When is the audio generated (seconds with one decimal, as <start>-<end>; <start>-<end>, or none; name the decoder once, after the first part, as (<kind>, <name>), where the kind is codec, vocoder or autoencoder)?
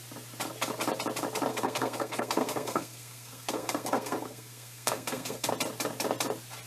1.5-5.5 (codec, SNAC)